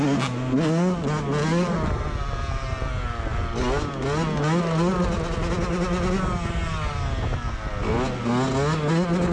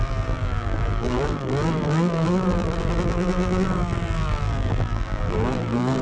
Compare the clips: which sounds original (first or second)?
first